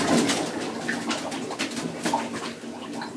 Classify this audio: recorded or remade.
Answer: recorded